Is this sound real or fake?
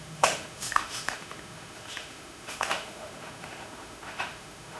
fake